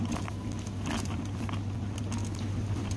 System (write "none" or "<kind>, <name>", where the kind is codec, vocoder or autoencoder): none